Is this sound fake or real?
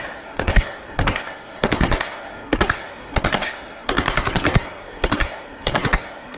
fake